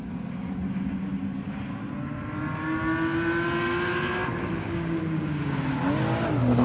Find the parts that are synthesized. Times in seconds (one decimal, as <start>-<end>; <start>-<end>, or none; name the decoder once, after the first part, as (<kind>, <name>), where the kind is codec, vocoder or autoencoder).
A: 4.6-5.8 (codec, DAC)

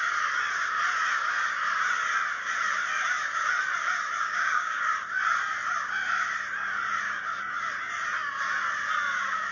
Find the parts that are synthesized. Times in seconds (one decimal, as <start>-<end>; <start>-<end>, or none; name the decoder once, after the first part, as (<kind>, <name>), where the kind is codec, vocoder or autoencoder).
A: 4.2-4.8 (codec, DAC)

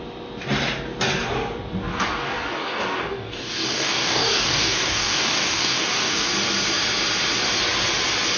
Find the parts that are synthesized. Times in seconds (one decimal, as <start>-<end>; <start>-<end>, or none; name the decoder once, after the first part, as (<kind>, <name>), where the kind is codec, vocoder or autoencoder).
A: 1.9-6.3 (codec, DAC)

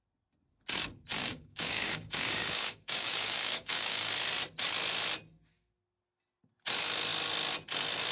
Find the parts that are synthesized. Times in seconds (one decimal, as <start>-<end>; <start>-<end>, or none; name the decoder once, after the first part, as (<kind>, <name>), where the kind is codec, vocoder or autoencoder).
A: 1.2-4.1 (codec, DAC)

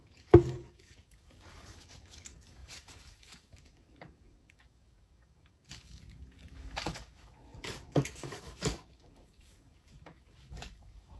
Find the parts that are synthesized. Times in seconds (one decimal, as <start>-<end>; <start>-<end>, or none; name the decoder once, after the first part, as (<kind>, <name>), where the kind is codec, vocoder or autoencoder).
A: 0.0-11.2 (codec, DAC)